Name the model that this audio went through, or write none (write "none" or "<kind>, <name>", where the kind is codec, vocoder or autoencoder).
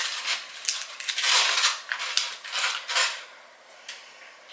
none